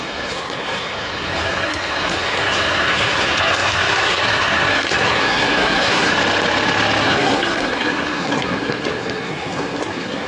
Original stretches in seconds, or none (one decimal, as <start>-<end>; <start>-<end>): 6.1-7.0